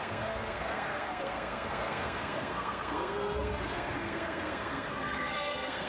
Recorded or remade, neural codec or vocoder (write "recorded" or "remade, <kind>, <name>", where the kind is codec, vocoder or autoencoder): remade, codec, SNAC